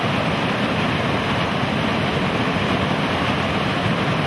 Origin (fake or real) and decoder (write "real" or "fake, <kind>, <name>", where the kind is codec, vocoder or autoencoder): real